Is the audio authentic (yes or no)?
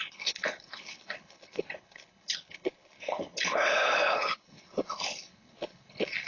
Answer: no